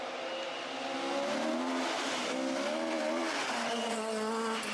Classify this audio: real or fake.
real